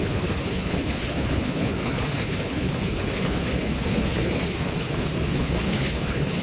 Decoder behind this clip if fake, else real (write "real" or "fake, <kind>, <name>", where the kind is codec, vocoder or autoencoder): fake, codec, HILCodec